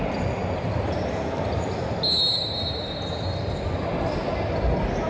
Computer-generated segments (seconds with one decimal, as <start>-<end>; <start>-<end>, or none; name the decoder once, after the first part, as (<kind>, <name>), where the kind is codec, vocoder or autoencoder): none